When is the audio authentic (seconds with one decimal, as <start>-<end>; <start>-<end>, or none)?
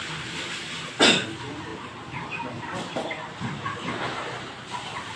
0.0-5.2